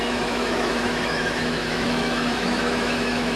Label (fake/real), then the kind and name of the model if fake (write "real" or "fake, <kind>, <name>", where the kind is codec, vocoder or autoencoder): fake, autoencoder, DAC-VAE